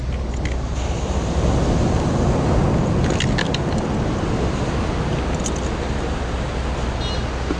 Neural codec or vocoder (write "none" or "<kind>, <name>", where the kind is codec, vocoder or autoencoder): none